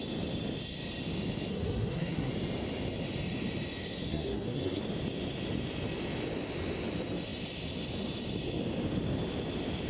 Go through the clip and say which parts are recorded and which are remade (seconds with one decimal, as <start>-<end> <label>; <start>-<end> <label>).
0.0-1.5 recorded; 1.5-2.3 remade; 2.3-4.1 recorded; 4.1-4.8 remade; 4.8-9.9 recorded